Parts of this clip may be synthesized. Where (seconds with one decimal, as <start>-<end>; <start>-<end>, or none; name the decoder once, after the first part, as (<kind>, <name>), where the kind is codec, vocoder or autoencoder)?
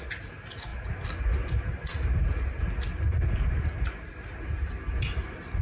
none